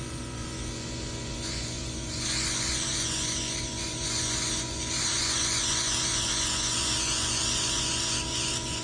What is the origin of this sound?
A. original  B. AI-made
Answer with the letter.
B